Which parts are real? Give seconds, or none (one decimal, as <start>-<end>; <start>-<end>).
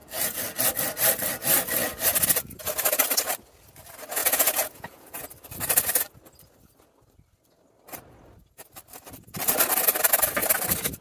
0.0-4.2; 5.3-11.0